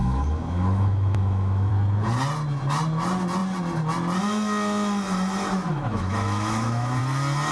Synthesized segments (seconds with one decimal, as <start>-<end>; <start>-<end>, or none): 0.0-1.7; 5.7-7.0